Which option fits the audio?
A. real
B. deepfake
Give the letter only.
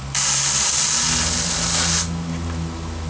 A